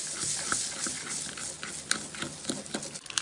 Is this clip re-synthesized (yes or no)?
no